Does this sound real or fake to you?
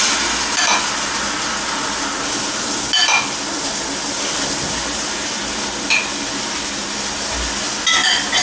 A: real